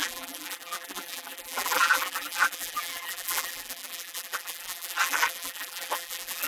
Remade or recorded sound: remade